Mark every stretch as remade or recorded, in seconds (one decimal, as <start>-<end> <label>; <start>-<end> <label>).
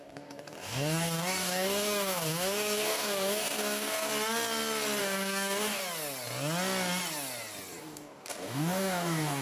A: 0.0-4.1 remade; 4.1-5.0 recorded; 5.0-5.8 remade; 5.8-7.8 recorded; 7.8-9.4 remade